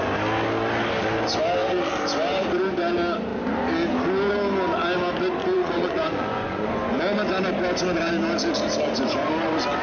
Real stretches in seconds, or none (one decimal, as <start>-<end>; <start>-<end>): 0.0-5.4; 6.7-9.8

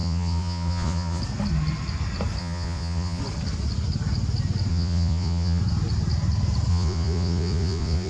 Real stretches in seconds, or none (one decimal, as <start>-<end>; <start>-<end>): 1.2-2.4; 3.2-4.7; 5.6-6.7

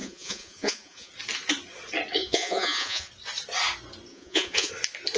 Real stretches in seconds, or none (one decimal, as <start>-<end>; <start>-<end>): 1.1-2.2; 3.1-4.1; 4.7-5.2

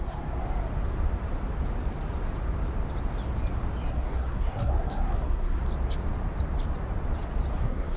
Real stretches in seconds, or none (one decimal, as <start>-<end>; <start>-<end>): 0.4-3.9; 5.6-7.5

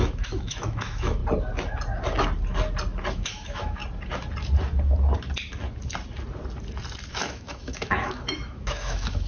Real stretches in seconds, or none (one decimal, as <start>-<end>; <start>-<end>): 1.2-3.1; 3.8-7.1

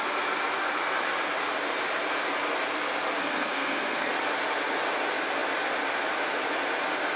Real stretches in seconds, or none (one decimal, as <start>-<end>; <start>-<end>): 0.0-3.2; 4.1-7.2